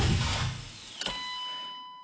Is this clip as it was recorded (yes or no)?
yes